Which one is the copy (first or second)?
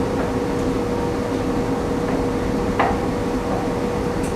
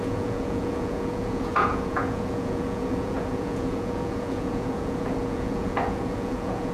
second